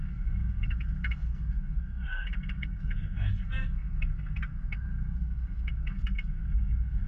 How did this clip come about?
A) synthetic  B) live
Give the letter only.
A